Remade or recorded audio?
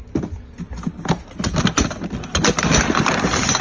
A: recorded